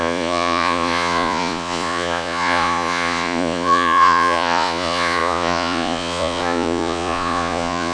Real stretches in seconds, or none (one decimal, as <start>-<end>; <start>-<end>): none

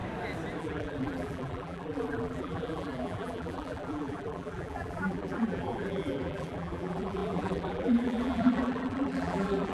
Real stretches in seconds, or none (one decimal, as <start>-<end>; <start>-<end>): 0.0-0.6

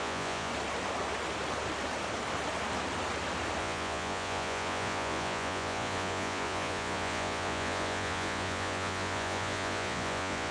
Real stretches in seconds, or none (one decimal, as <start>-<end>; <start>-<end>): 0.5-3.6

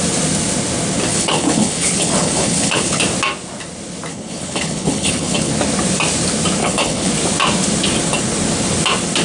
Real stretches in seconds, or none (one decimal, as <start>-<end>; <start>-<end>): 0.0-1.1; 3.0-4.1; 5.5-6.6; 7.1-9.2